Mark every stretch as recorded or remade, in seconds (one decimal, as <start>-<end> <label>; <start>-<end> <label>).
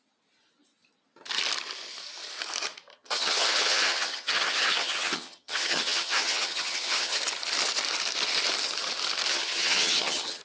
0.0-2.9 recorded; 2.9-7.2 remade; 7.2-9.3 recorded; 9.3-10.4 remade